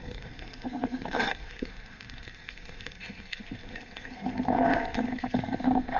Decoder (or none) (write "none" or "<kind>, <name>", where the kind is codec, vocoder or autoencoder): codec, SNAC